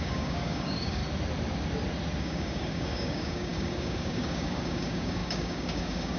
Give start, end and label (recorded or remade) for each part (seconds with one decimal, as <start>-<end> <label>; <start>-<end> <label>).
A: 0.0-1.0 remade; 1.0-2.2 recorded; 2.2-6.2 remade